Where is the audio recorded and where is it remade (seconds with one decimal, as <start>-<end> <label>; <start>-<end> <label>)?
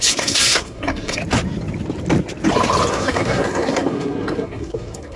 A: 0.0-1.2 remade; 1.2-2.9 recorded; 2.9-5.2 remade